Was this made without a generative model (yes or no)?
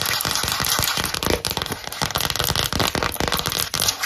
yes